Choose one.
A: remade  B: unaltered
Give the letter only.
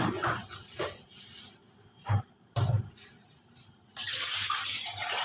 A